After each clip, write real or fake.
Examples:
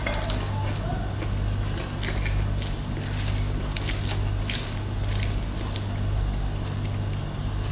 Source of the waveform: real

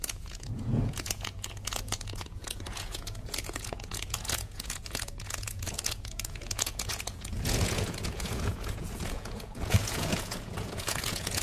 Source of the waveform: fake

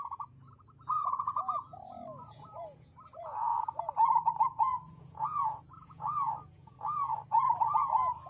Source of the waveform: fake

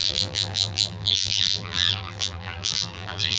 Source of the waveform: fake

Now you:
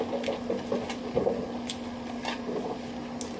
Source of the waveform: real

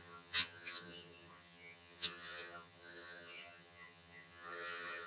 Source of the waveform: fake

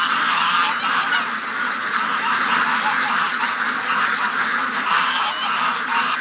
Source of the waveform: real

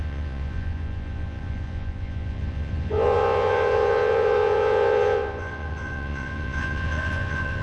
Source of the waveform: fake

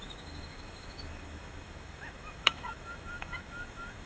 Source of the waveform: fake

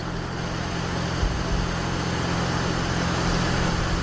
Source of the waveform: real